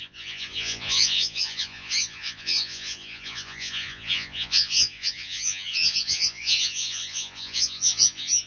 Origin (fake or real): fake